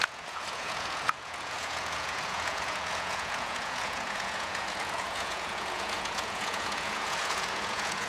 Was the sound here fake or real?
fake